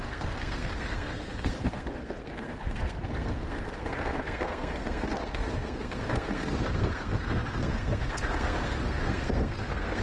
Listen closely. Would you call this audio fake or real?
fake